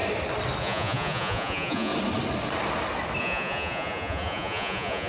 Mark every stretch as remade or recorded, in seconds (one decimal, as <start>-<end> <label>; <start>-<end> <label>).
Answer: 0.0-0.6 recorded; 0.6-1.9 remade; 1.9-3.2 recorded; 3.2-5.1 remade